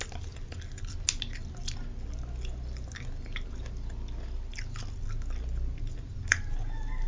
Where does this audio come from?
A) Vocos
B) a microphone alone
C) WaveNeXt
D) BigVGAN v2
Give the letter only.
B